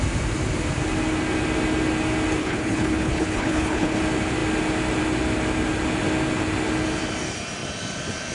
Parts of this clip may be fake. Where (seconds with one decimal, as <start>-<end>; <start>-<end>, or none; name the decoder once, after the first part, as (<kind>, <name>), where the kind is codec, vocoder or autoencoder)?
2.4-4.0 (codec, HILCodec)